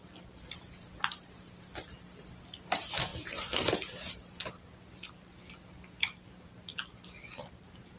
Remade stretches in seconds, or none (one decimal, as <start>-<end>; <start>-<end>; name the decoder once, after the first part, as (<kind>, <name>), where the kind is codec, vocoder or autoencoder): none